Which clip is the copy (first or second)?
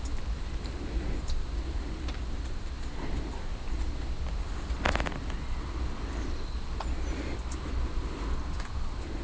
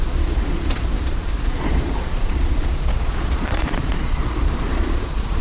second